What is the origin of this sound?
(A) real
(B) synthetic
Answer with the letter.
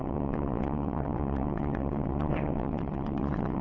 B